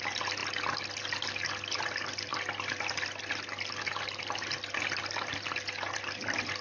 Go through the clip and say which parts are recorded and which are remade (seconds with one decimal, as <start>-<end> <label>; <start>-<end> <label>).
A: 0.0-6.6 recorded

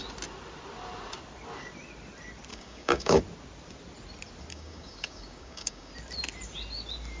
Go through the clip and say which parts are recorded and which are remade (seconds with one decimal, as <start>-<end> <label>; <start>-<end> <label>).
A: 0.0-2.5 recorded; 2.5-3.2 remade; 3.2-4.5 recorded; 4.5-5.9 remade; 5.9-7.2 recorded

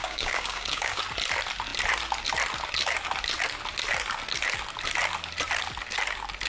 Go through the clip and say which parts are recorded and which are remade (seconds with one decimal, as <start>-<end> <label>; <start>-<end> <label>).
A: 0.0-1.0 remade; 1.0-6.5 recorded